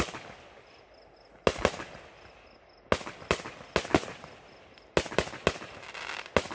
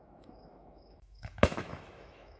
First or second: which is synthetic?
second